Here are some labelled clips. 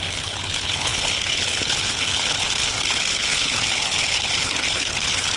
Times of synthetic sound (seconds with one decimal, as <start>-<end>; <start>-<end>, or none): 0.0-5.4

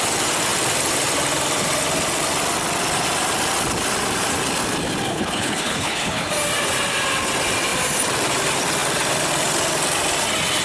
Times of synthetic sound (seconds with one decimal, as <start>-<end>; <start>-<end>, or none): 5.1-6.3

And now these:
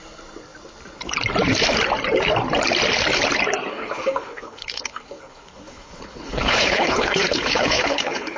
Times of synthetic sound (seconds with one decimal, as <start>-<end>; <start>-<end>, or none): 3.7-8.4

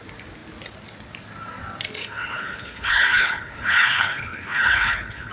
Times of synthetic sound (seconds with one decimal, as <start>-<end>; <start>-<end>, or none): 2.0-5.3

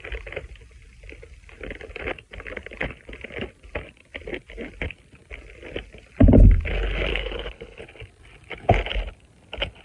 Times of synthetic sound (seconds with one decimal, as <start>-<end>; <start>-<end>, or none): 7.1-7.8

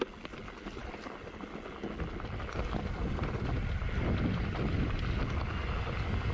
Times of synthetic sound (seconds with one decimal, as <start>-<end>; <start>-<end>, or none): none